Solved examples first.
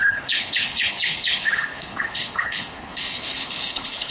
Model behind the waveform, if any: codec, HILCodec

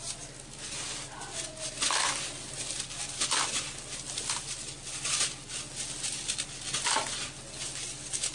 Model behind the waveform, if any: none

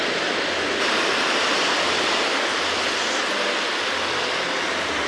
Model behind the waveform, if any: none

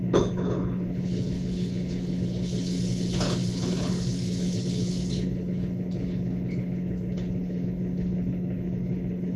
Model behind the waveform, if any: codec, HILCodec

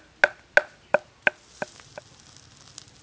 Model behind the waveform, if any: none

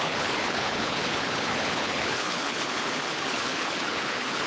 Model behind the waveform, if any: codec, HILCodec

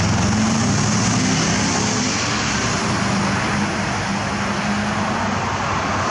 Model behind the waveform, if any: none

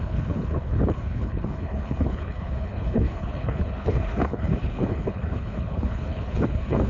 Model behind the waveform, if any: codec, HILCodec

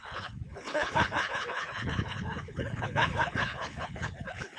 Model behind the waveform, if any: codec, HILCodec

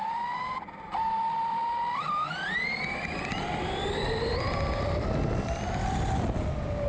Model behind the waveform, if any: none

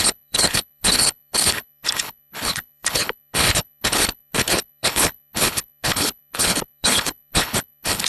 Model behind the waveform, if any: codec, HILCodec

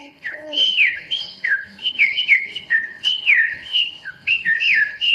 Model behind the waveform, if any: codec, HILCodec